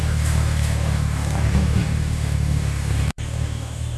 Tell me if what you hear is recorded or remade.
remade